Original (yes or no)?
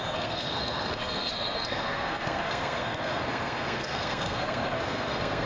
no